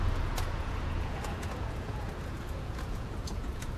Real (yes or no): no